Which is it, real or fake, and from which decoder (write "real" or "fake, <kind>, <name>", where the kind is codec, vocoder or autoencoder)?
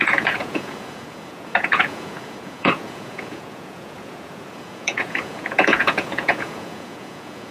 fake, vocoder, Vocos